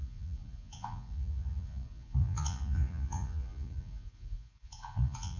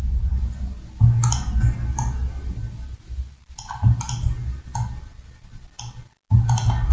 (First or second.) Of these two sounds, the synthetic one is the first